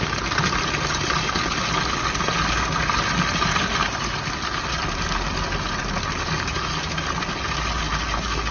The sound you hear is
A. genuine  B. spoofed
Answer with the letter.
A